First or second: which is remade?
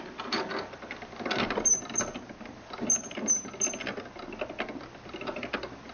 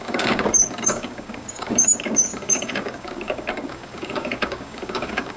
second